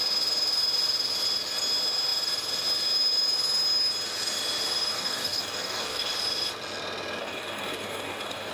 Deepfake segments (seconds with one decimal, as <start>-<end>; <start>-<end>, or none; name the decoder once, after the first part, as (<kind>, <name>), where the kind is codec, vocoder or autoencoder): 4.9-6.1 (codec, DAC); 7.2-8.5